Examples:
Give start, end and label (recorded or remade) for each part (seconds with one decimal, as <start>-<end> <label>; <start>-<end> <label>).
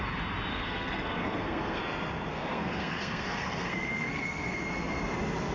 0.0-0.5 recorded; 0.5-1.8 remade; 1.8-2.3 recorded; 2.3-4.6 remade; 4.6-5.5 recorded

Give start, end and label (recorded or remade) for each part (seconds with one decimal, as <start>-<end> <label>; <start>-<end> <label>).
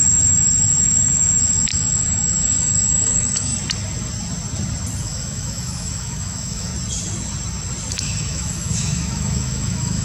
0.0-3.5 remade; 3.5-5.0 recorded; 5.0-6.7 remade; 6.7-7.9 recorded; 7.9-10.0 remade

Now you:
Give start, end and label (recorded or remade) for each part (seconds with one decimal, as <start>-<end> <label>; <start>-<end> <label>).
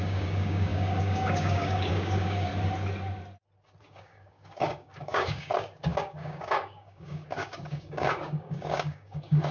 0.0-2.5 remade; 2.5-3.8 recorded; 3.8-9.5 remade